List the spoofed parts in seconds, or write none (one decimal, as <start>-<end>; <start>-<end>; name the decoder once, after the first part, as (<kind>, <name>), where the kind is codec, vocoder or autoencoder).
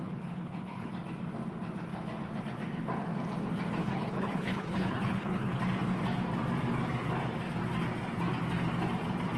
0.0-0.9 (codec, HILCodec); 3.8-5.6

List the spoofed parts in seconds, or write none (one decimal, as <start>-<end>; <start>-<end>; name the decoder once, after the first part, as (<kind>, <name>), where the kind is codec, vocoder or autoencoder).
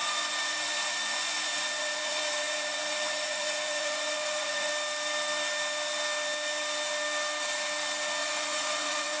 0.0-4.7 (vocoder, Vocos); 8.2-9.2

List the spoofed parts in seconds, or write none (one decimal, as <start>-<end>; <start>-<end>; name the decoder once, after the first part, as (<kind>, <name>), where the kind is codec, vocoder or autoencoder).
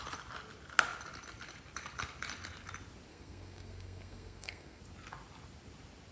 3.1-4.8 (codec, SNAC)